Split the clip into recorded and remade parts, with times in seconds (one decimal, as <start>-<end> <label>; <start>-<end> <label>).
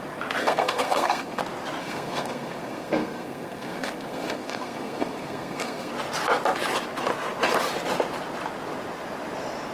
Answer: 0.0-0.4 recorded; 0.4-1.4 remade; 1.4-1.8 recorded; 1.8-5.9 remade; 5.9-9.7 recorded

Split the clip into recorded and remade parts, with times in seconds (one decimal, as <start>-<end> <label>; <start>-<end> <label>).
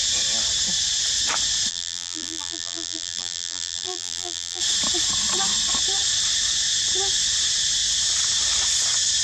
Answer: 0.0-1.7 recorded; 1.7-4.6 remade; 4.6-9.2 recorded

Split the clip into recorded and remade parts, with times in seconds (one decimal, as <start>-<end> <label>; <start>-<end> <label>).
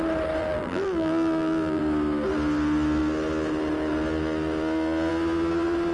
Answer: 0.0-0.4 recorded; 0.4-1.8 remade; 1.8-5.9 recorded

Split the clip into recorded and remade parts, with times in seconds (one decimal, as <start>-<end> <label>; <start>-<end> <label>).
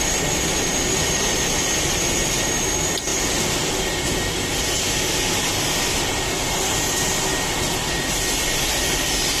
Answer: 0.0-9.4 recorded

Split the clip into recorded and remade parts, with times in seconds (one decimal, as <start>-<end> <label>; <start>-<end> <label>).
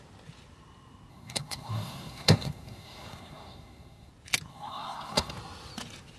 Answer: 0.0-1.1 recorded; 1.1-4.1 remade; 4.1-4.5 recorded; 4.5-5.3 remade; 5.3-6.2 recorded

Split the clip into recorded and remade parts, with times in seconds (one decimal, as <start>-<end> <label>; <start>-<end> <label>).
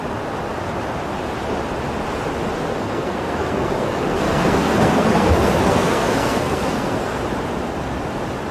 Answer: 0.0-2.7 recorded; 2.7-7.2 remade; 7.2-8.5 recorded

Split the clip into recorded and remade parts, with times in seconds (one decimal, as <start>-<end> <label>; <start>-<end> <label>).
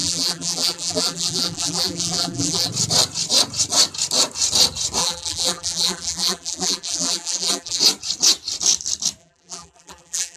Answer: 0.0-2.7 remade; 2.7-5.0 recorded; 5.0-7.8 remade; 7.8-9.2 recorded; 9.2-10.4 remade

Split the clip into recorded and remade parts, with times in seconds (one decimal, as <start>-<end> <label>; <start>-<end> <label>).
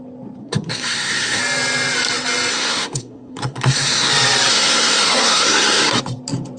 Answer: 0.0-0.4 recorded; 0.4-1.4 remade; 1.4-2.5 recorded; 2.5-4.1 remade; 4.1-4.5 recorded; 4.5-6.0 remade; 6.0-6.6 recorded